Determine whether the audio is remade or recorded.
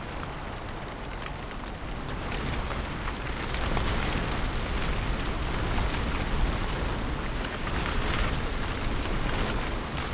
recorded